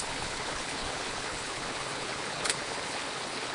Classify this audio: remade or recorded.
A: remade